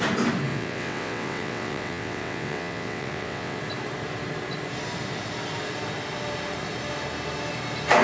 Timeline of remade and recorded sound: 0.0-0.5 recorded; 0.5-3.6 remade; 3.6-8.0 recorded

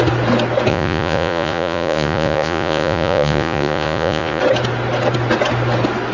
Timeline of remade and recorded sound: 0.0-0.7 recorded; 0.7-4.4 remade; 4.4-6.1 recorded